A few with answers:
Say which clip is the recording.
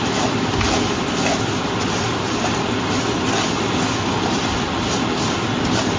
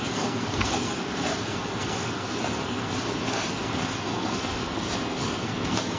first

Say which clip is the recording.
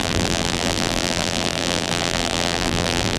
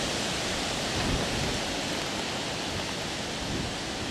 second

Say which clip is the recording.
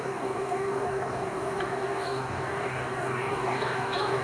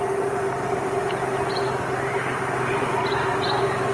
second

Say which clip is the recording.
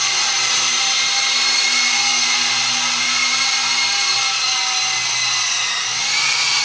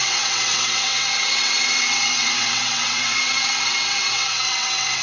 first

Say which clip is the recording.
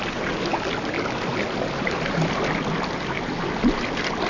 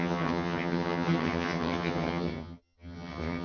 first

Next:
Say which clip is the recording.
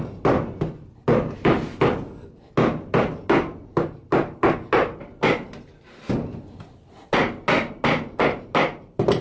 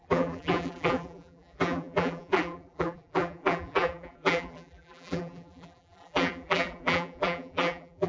first